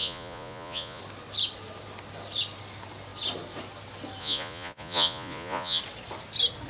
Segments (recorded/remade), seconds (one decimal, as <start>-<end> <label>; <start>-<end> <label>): 0.0-1.0 remade; 1.0-4.2 recorded; 4.2-5.8 remade; 5.8-6.7 recorded